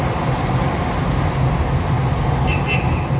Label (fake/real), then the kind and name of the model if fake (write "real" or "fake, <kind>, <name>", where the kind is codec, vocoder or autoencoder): real